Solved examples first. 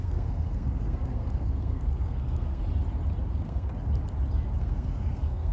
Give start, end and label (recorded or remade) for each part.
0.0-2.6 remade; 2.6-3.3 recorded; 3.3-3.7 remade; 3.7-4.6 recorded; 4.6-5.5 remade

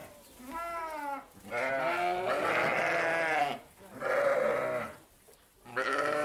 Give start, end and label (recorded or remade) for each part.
0.0-6.2 recorded

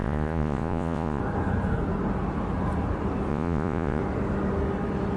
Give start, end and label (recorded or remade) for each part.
0.0-1.2 remade; 1.2-3.3 recorded; 3.3-4.0 remade; 4.0-5.2 recorded

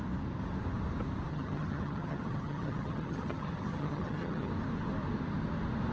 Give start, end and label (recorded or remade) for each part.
0.0-1.3 recorded; 1.3-4.5 remade; 4.5-5.9 recorded

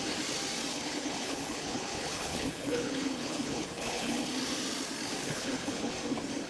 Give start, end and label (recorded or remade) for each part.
0.0-0.7 recorded; 0.7-4.3 remade; 4.3-5.2 recorded; 5.2-5.9 remade; 5.9-6.5 recorded